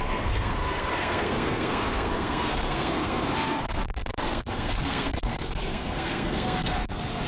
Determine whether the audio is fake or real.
fake